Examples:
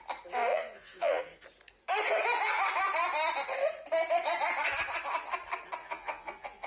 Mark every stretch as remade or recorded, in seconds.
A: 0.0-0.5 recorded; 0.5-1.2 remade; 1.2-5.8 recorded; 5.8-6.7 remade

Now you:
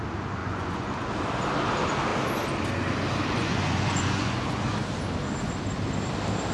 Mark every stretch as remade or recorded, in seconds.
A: 0.0-0.4 recorded; 0.4-1.1 remade; 1.1-3.4 recorded; 3.4-4.7 remade; 4.7-6.5 recorded

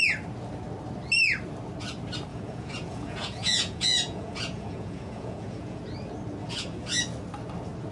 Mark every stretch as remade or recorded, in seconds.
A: 0.0-2.3 recorded; 2.3-5.8 remade; 5.8-6.4 recorded; 6.4-7.0 remade; 7.0-7.9 recorded

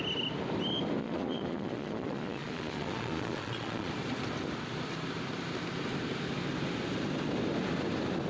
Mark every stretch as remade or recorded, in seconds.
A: 0.0-1.0 recorded; 1.0-3.9 remade; 3.9-8.3 recorded

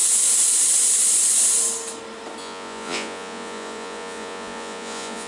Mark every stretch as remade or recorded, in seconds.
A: 0.0-2.4 recorded; 2.4-5.3 remade